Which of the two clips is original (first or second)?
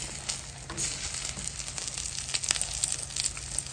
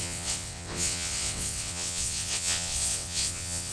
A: first